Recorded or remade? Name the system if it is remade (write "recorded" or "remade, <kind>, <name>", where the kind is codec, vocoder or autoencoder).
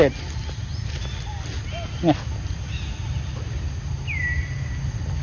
recorded